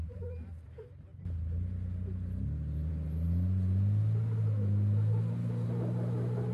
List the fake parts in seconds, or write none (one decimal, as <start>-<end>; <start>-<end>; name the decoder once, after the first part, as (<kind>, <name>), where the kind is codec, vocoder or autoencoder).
none